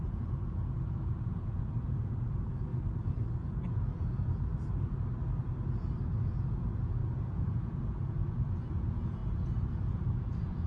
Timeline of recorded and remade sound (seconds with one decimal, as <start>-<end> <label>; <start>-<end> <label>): 0.0-2.7 remade; 2.7-3.3 recorded; 3.3-4.5 remade; 4.5-6.0 recorded; 6.0-9.2 remade; 9.2-9.8 recorded; 9.8-10.7 remade